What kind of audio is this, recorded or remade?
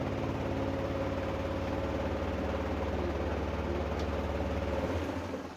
recorded